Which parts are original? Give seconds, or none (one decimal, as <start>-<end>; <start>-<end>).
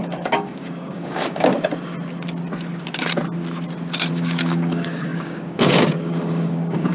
1.5-4.1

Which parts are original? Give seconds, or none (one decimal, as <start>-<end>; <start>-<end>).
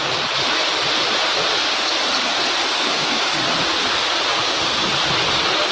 0.0-2.7; 3.4-4.3; 4.9-5.7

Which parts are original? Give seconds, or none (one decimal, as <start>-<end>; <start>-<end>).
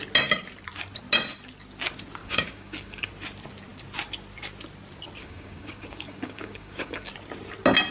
0.0-2.2; 3.1-5.2; 7.1-7.9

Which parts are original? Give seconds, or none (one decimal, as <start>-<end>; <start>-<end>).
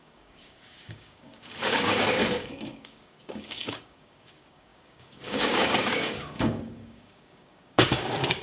none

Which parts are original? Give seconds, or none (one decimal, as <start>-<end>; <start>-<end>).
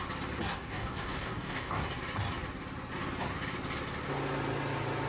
0.0-0.5; 1.8-5.1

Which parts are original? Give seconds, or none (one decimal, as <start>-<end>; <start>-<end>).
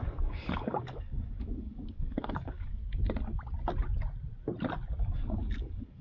2.8-5.0